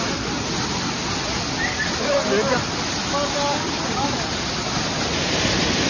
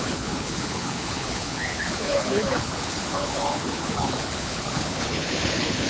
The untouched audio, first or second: first